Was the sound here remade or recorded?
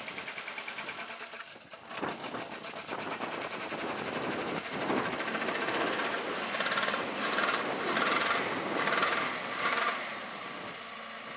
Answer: recorded